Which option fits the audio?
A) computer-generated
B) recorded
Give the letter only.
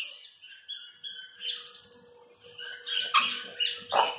B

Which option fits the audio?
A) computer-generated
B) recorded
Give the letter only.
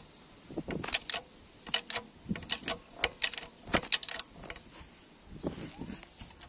B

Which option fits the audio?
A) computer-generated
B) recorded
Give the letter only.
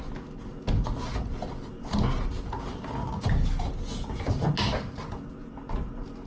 B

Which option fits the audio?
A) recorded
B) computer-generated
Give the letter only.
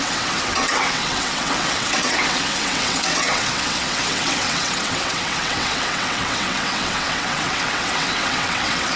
B